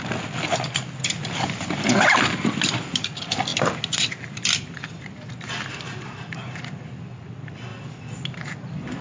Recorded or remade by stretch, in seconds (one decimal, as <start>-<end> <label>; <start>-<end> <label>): 0.0-9.0 recorded